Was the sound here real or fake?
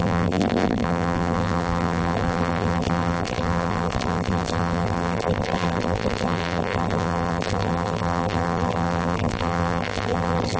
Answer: fake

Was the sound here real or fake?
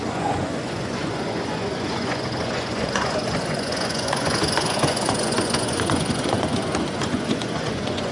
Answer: fake